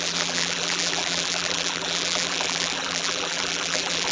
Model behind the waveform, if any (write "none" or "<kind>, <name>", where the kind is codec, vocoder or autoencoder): vocoder, BigVGAN v2